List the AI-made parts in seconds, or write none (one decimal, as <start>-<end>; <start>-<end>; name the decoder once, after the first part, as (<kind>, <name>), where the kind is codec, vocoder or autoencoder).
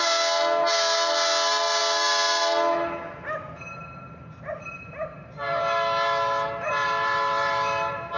none